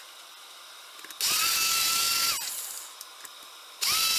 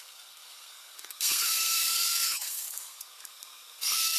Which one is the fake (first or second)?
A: second